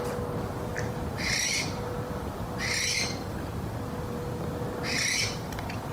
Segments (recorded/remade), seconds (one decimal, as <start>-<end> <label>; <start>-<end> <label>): 0.0-5.9 remade